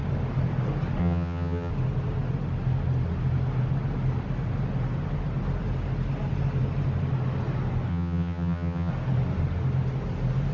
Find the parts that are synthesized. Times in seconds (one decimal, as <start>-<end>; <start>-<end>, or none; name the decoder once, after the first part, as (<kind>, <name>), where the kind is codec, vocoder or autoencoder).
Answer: 1.0-1.7 (vocoder, HiFi-GAN); 7.9-8.9